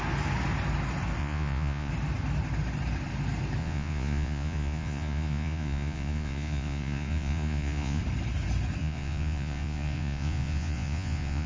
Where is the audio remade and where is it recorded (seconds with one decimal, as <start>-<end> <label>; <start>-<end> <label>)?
0.0-1.2 recorded; 1.2-1.9 remade; 1.9-3.6 recorded; 3.6-8.0 remade; 8.0-8.8 recorded; 8.8-11.5 remade